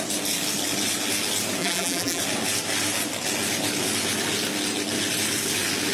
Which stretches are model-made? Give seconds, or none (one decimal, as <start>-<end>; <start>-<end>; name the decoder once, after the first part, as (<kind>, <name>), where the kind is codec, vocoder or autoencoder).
1.6-2.2 (vocoder, BigVGAN v2)